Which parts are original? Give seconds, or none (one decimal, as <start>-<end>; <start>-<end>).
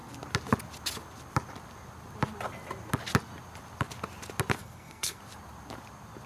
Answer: 0.0-4.6; 5.2-6.3